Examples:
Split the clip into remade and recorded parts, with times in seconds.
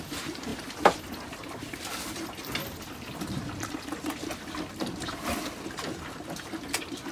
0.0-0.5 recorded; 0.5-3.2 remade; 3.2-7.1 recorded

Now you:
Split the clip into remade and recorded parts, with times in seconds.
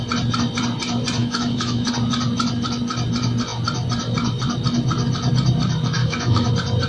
0.0-1.2 recorded; 1.2-1.9 remade; 1.9-6.0 recorded; 6.0-6.5 remade; 6.5-6.9 recorded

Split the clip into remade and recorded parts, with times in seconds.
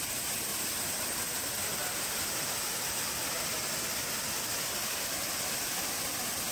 0.0-6.5 recorded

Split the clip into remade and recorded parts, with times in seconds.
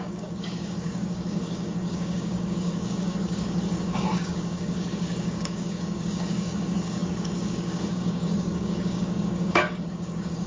0.0-10.5 remade